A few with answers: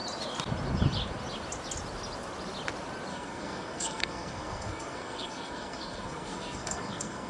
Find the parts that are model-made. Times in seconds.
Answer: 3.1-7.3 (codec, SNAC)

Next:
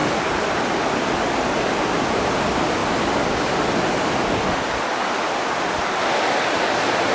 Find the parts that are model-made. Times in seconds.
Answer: 0.0-0.7 (vocoder, BigVGAN v2)